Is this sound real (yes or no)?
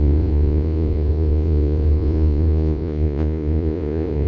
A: no